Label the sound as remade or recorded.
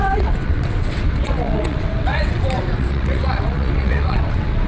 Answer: remade